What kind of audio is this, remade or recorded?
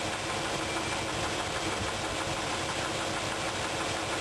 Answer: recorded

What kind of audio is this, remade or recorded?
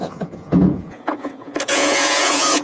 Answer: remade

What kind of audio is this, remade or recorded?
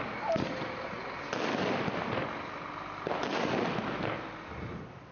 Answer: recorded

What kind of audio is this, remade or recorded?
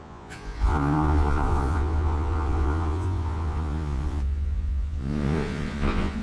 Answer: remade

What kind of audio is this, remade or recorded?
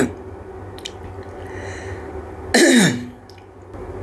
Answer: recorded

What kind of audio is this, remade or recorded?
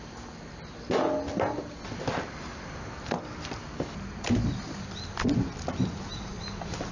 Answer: recorded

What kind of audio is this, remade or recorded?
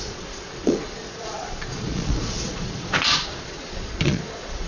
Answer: remade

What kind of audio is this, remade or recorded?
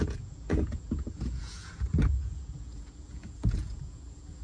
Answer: remade